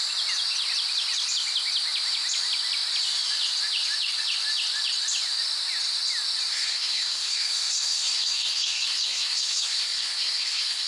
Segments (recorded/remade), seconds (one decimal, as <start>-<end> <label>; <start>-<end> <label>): 0.0-6.5 recorded; 6.5-10.9 remade